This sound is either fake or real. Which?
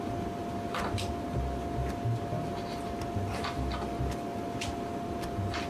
real